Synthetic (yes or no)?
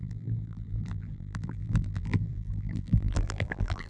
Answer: yes